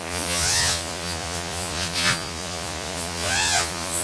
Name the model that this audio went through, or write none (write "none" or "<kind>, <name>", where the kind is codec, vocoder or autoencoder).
vocoder, Vocos